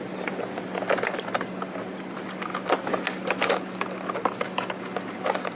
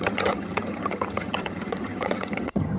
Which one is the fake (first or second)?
second